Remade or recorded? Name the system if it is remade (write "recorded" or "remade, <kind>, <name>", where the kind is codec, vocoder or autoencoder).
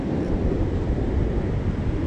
recorded